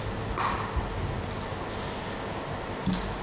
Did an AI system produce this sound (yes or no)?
no